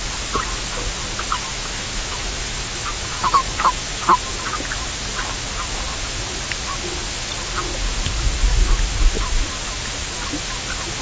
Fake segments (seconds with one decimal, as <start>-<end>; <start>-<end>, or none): 1.5-4.0